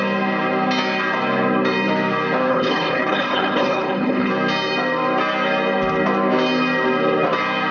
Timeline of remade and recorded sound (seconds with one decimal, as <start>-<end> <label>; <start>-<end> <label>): 0.0-2.5 recorded; 2.5-4.3 remade; 4.3-7.7 recorded

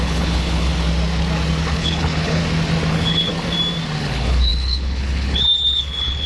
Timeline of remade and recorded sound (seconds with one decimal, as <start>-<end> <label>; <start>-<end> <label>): 0.0-0.7 remade; 0.7-1.7 recorded; 1.7-2.4 remade; 2.4-2.9 recorded; 2.9-3.3 remade; 3.3-4.0 recorded; 4.0-6.3 remade

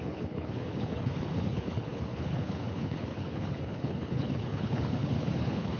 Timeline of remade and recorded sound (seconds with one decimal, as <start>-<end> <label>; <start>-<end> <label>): 0.0-5.8 remade

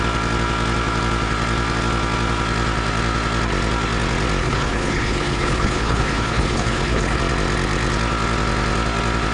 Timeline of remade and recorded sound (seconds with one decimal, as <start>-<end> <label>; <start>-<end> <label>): 0.0-4.4 recorded; 4.4-7.2 remade; 7.2-9.3 recorded

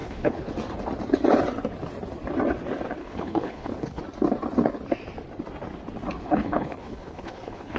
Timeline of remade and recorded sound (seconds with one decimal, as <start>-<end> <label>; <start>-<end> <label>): 0.0-0.5 remade; 0.5-3.0 recorded; 3.0-4.0 remade; 4.0-6.2 recorded; 6.2-7.8 remade

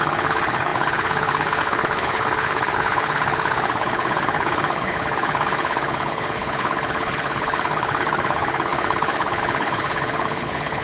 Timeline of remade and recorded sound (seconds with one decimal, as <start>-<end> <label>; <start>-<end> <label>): 0.0-10.8 remade

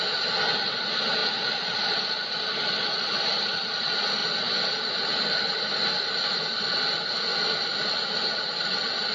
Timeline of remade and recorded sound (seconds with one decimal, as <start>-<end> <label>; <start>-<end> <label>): 0.0-9.1 recorded

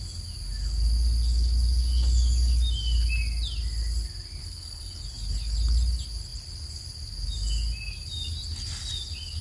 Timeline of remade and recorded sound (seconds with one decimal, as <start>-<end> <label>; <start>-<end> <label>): 0.0-4.4 recorded; 4.4-5.0 remade; 5.0-9.4 recorded